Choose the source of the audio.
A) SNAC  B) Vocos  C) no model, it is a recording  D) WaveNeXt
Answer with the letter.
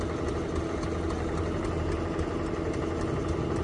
C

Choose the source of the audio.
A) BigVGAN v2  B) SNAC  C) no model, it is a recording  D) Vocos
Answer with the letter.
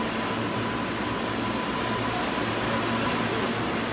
C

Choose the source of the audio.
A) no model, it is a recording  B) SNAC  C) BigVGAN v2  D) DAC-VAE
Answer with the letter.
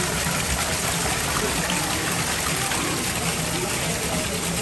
A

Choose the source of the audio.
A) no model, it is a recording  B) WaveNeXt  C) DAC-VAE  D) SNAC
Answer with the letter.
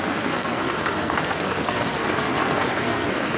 D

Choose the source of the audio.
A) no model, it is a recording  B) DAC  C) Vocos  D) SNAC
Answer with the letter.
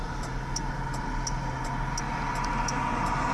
A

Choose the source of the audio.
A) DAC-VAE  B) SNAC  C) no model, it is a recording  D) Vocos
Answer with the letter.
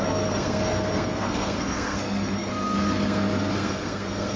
B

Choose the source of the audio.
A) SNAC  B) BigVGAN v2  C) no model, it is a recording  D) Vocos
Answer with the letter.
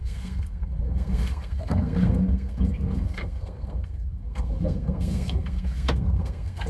A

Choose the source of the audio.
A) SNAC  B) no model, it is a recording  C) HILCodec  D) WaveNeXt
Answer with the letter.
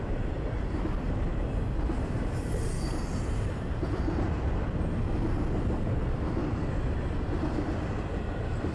B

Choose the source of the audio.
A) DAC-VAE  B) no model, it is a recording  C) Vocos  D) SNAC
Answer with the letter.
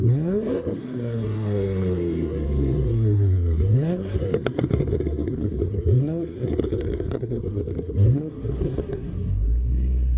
D